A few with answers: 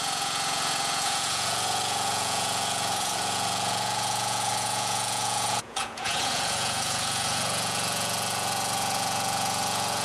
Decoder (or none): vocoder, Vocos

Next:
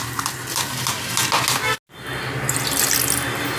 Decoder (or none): none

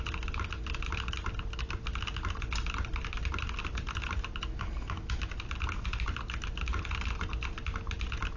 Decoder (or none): none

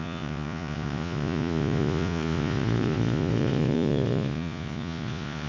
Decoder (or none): vocoder, Vocos